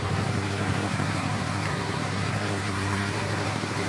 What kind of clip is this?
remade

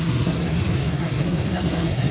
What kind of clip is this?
remade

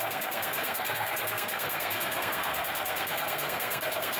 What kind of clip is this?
remade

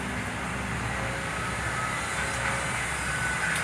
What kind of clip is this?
recorded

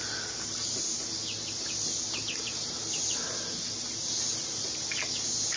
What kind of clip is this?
recorded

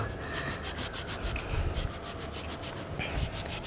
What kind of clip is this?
recorded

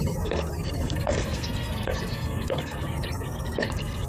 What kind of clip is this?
remade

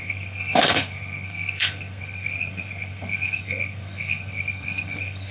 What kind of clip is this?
remade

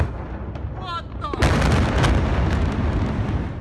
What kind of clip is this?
recorded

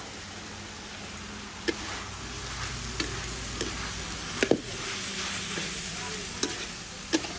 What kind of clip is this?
recorded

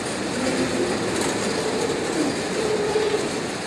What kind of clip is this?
recorded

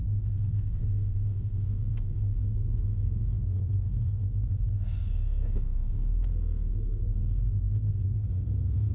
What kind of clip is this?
remade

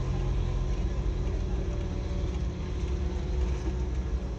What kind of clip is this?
recorded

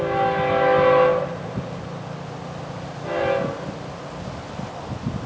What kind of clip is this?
recorded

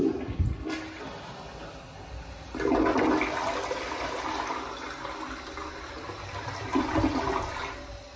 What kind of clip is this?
recorded